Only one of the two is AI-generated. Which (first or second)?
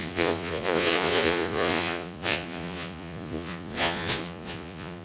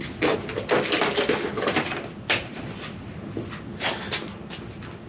first